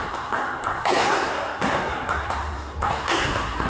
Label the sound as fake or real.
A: fake